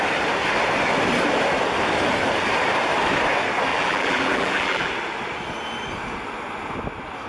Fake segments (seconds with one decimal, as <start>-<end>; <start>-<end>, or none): 3.7-4.9